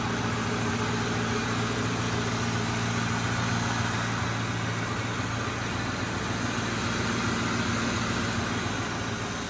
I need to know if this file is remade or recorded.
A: recorded